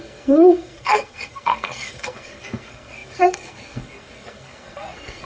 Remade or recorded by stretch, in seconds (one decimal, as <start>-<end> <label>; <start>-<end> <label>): 0.0-5.3 remade